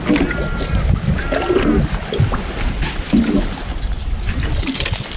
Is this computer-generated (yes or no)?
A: no